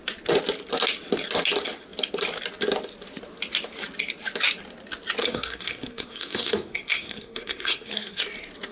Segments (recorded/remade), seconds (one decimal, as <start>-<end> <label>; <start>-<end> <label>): 0.0-5.2 recorded; 5.2-8.2 remade; 8.2-8.7 recorded